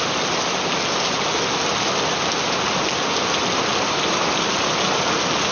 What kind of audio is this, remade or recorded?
recorded